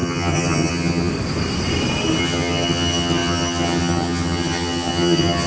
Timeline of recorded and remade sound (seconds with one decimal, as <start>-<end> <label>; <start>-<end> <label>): 0.0-1.1 remade; 1.1-2.2 recorded; 2.2-5.5 remade